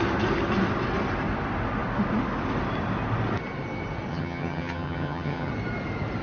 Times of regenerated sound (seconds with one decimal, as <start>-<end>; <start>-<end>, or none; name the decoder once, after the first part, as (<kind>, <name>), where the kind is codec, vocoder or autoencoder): 4.1-5.5 (vocoder, HiFi-GAN)